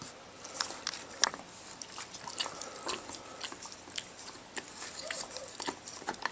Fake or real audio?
real